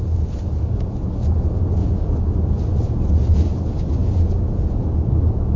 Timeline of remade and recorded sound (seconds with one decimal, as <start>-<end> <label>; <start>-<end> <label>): 0.0-1.8 recorded; 1.8-2.3 remade; 2.3-4.0 recorded; 4.0-4.9 remade; 4.9-5.6 recorded